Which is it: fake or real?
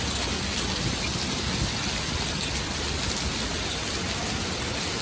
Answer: real